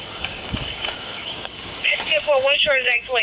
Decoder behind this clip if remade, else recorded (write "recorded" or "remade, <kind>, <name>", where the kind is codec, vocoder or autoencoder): remade, codec, DAC